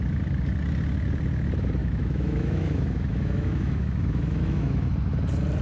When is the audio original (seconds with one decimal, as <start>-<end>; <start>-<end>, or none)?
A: 0.0-1.8; 4.9-5.6